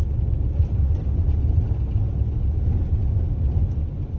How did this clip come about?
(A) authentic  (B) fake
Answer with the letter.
A